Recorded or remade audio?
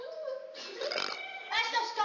recorded